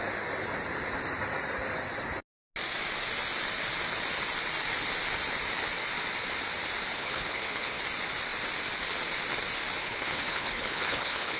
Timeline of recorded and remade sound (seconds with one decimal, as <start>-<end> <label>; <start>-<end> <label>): 0.0-6.9 recorded; 6.9-7.8 remade; 7.8-9.8 recorded; 9.8-11.4 remade